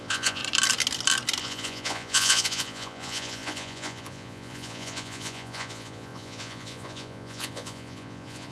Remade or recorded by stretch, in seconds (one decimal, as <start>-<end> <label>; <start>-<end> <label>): 0.0-0.4 remade; 0.4-1.4 recorded; 1.4-8.5 remade